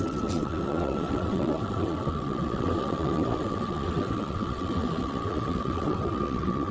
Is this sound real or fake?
fake